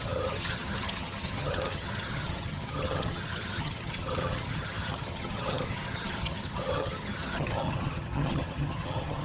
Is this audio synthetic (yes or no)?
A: yes